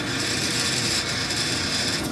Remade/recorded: remade